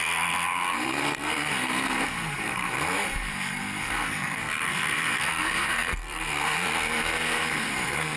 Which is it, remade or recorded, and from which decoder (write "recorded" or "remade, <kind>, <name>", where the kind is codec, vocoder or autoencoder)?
remade, codec, SNAC